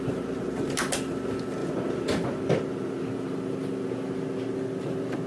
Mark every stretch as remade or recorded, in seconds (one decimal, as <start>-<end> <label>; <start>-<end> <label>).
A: 0.0-1.6 recorded; 1.6-4.8 remade; 4.8-5.3 recorded